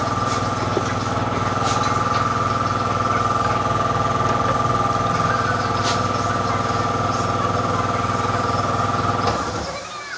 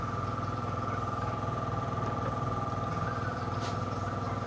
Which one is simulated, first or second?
second